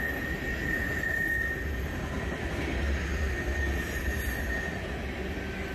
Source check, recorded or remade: recorded